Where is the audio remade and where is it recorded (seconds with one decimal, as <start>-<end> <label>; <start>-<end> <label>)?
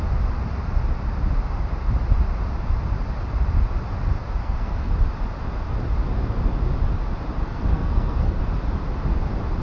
0.0-4.4 recorded; 4.4-4.9 remade; 4.9-7.4 recorded; 7.4-8.4 remade; 8.4-9.6 recorded